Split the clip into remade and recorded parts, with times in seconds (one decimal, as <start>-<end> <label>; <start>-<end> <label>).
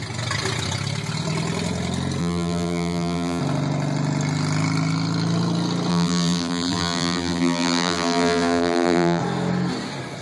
0.0-2.2 recorded; 2.2-3.4 remade; 3.4-5.9 recorded; 5.9-9.2 remade; 9.2-10.2 recorded